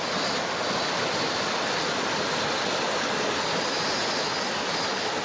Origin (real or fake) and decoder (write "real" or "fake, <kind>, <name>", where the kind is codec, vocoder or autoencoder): real